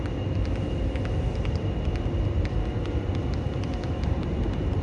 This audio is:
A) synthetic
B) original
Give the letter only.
B